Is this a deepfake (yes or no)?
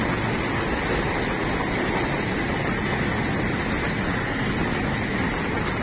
no